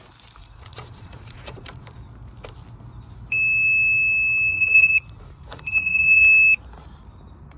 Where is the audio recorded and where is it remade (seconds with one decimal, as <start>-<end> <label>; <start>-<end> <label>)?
0.0-0.4 recorded; 0.4-1.8 remade; 1.8-4.5 recorded; 4.5-6.2 remade; 6.2-7.6 recorded